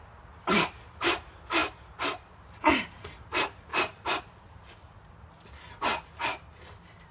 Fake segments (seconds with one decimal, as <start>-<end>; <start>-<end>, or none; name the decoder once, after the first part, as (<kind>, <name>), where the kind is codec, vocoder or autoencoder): 1.6-2.4 (vocoder, BigVGAN v2)